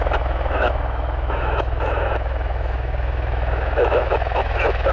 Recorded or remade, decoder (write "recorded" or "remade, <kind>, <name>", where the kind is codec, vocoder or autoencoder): remade, autoencoder, DAC-VAE